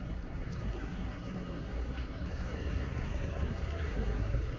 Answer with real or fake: fake